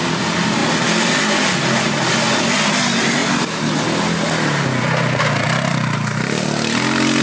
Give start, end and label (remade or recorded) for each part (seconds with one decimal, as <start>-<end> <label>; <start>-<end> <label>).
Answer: 0.0-7.2 recorded